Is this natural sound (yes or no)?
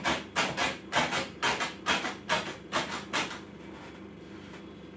yes